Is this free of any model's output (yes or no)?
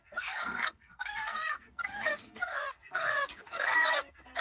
no